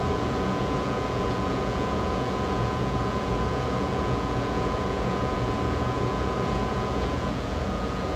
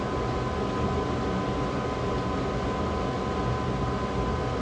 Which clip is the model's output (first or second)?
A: first